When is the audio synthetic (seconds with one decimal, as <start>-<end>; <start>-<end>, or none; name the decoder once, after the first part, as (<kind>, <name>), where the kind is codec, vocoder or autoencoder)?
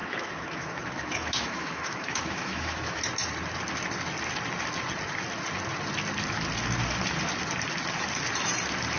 0.0-3.0 (autoencoder, DAC-VAE)